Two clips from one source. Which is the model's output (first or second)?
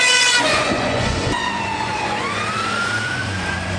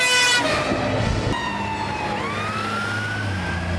first